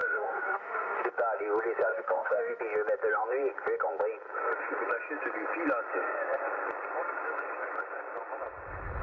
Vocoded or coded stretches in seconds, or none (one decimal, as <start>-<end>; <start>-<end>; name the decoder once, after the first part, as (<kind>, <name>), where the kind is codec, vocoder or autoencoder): 0.0-1.1 (autoencoder, DAC-VAE); 1.9-2.6